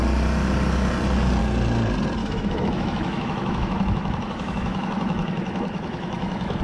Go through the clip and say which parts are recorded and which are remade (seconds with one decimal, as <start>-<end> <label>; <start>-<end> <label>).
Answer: 0.0-2.2 recorded; 2.2-6.6 remade